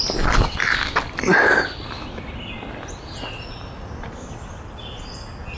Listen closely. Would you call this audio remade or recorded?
recorded